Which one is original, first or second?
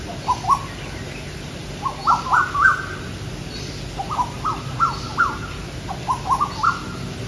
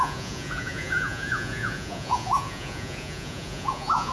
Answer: first